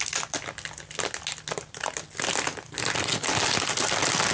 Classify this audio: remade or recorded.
recorded